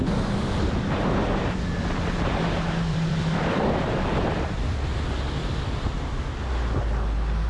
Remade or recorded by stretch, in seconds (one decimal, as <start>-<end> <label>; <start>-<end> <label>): 0.0-2.9 recorded; 2.9-4.3 remade; 4.3-5.4 recorded; 5.4-6.4 remade; 6.4-7.5 recorded